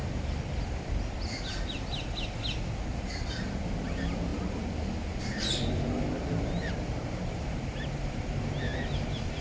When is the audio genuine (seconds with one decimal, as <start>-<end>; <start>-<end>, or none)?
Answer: 0.0-2.5